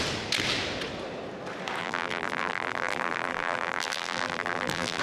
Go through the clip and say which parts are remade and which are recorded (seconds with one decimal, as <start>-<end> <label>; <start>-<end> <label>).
0.0-1.8 recorded; 1.8-5.0 remade